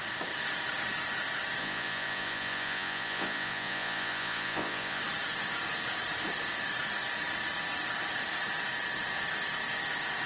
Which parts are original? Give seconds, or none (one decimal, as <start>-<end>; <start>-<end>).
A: 0.0-1.6; 5.0-10.3